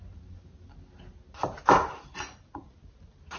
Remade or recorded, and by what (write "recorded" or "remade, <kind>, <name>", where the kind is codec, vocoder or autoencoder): recorded